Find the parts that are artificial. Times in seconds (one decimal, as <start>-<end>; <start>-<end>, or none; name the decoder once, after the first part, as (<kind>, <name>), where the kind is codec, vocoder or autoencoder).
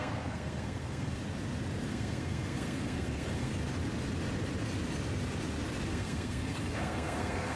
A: 0.0-1.2 (codec, SNAC); 1.9-3.5; 5.9-7.6